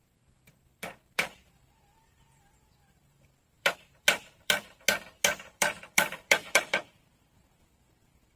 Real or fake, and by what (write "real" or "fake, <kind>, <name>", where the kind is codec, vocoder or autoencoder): fake, vocoder, BigVGAN v2